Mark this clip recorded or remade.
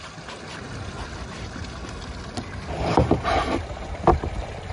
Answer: recorded